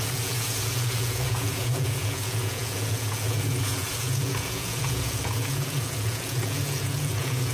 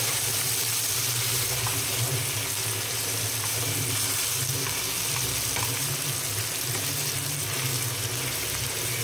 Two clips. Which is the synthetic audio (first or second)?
first